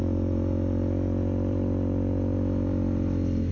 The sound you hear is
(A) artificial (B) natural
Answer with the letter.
B